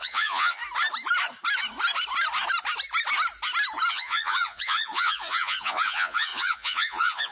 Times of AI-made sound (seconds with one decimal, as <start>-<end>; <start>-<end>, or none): 0.0-0.6; 3.9-7.3